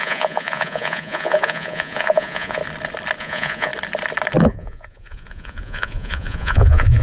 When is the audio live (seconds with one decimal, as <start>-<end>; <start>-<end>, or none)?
2.6-3.2; 3.7-4.4